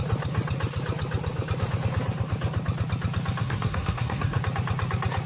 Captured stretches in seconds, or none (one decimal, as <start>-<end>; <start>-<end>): 0.0-3.4; 4.4-5.3